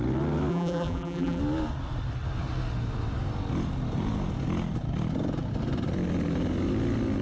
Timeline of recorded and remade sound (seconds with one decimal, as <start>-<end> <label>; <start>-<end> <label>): 0.0-0.5 recorded; 0.5-1.4 remade; 1.4-7.2 recorded